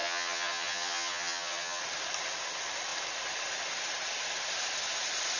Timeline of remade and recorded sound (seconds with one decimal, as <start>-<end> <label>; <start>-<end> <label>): 0.0-1.8 remade; 1.8-5.4 recorded